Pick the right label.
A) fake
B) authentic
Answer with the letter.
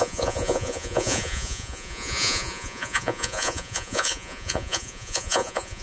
A